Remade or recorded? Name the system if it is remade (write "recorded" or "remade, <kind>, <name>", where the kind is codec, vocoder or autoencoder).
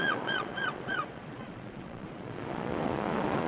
remade, vocoder, Vocos